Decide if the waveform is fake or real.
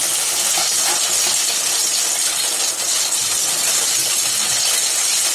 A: real